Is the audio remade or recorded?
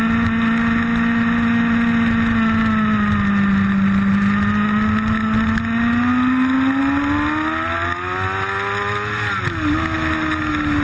recorded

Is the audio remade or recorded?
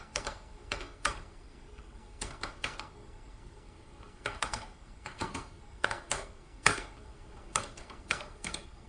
remade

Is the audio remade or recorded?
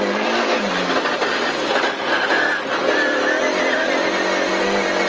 recorded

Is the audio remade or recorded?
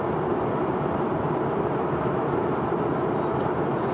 remade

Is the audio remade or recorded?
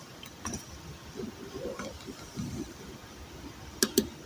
recorded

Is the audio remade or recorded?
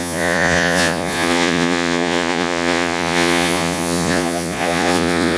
remade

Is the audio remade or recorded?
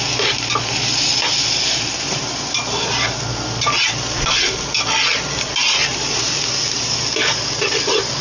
recorded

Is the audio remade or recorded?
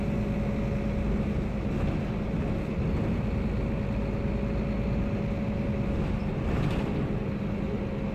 recorded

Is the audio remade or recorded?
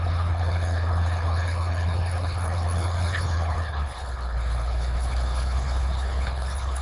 remade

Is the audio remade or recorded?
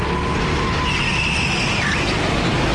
recorded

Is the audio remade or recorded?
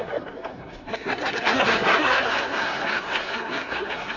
remade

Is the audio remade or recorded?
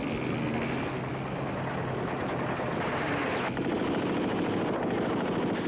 recorded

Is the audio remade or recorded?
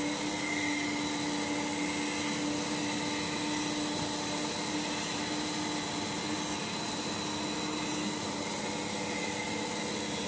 recorded